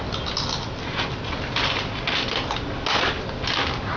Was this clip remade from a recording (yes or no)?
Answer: no